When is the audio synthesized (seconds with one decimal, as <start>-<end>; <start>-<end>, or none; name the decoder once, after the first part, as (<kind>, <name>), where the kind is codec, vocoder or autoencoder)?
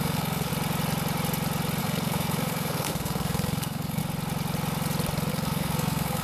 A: 0.0-0.5 (codec, SNAC); 1.8-4.0; 5.3-6.2